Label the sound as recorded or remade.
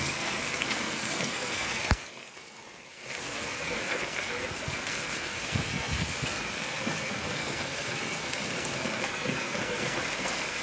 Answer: remade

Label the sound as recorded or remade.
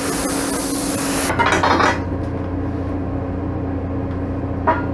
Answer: recorded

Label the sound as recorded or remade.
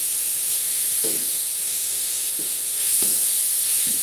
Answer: remade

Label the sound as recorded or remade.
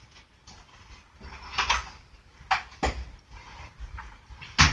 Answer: recorded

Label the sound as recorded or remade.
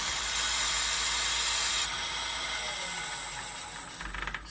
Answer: recorded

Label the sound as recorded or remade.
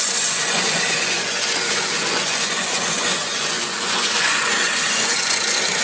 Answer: remade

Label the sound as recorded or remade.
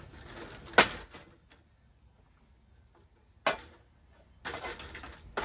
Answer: recorded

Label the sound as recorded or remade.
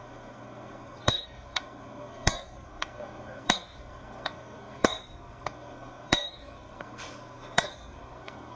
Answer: remade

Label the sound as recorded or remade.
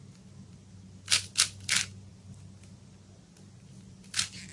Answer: recorded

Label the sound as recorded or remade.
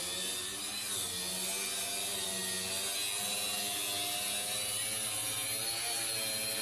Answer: recorded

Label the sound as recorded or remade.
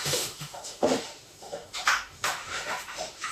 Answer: remade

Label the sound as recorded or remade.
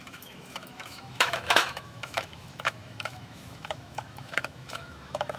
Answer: remade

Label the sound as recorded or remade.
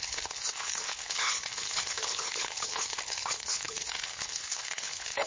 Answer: remade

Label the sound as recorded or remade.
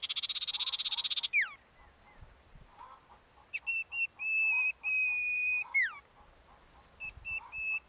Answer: recorded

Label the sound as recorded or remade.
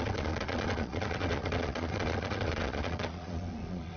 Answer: remade